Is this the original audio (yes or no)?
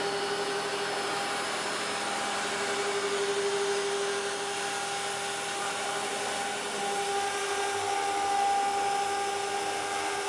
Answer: yes